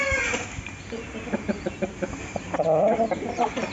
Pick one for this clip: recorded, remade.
recorded